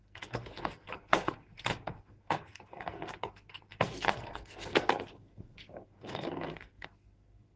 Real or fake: fake